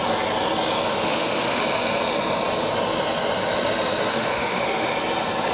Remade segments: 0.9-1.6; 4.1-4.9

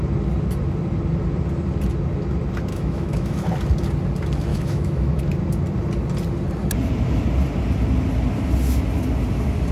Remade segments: 2.7-3.4; 4.5-5.2

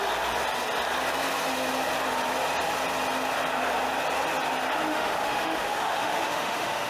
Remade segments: 4.9-6.9

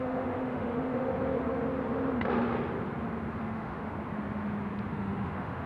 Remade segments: 0.0-1.1; 3.4-3.9; 4.9-5.7

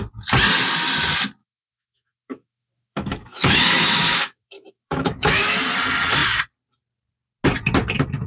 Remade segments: 1.4-5.6